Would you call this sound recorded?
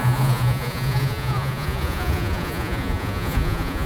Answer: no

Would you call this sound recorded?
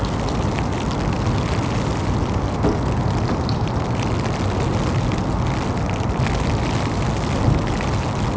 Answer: yes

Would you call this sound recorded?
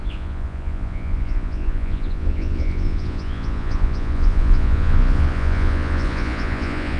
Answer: no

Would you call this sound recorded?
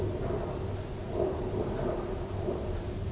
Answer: yes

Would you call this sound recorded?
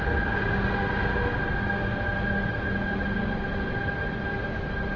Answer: yes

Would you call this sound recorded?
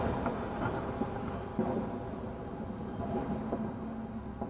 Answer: yes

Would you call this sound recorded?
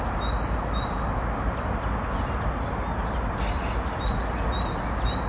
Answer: yes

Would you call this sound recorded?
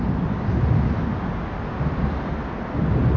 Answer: yes